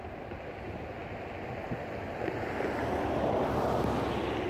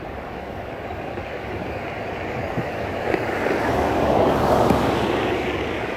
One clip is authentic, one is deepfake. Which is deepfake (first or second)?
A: second